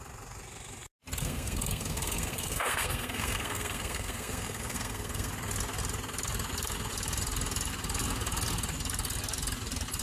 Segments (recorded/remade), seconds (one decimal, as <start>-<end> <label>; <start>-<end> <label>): 0.0-1.2 recorded; 1.2-5.3 remade; 5.3-10.0 recorded